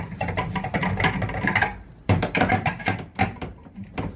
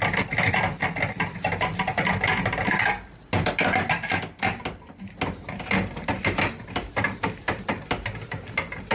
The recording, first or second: second